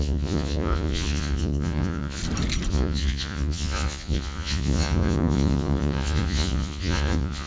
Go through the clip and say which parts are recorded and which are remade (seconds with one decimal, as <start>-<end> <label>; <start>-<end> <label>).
0.0-2.2 remade; 2.2-2.7 recorded; 2.7-7.5 remade